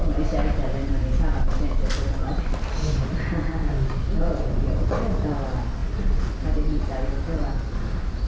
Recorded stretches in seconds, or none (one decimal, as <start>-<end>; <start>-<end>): 0.0-8.3